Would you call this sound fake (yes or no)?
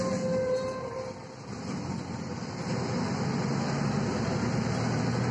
no